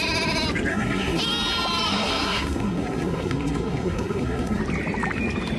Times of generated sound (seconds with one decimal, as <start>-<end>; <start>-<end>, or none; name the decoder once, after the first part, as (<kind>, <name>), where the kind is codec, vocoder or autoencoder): 0.7-1.2 (codec, SNAC); 1.9-4.6